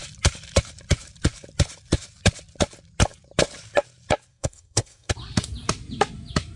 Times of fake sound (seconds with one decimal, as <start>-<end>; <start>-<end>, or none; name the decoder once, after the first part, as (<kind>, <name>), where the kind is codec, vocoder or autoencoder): 4.3-5.1 (codec, SNAC)